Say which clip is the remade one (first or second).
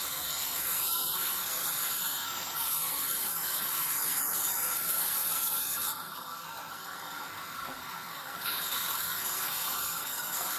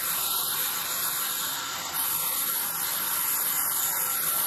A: first